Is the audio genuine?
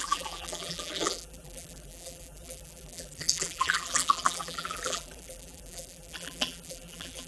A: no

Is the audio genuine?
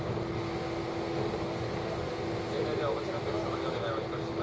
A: yes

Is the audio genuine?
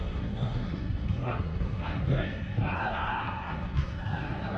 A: no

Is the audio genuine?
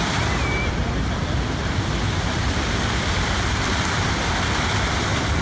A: yes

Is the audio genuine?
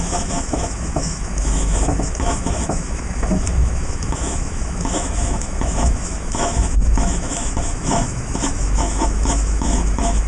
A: no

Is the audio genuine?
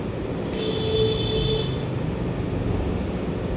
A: yes